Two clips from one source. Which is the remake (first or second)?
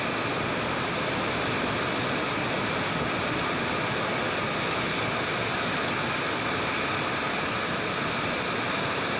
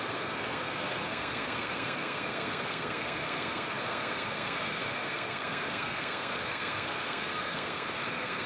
second